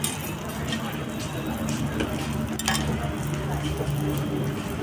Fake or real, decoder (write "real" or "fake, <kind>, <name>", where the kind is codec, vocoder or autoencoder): real